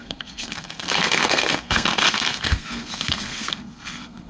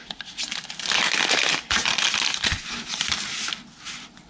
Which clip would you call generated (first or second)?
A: first